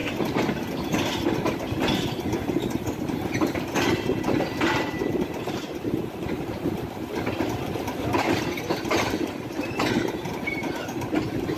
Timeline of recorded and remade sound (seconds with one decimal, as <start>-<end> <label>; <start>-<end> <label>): 0.0-4.2 recorded; 4.2-11.6 remade